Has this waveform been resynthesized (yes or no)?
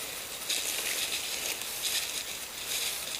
no